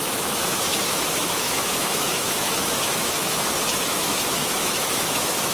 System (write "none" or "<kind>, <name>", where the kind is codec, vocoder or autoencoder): autoencoder, DAC-VAE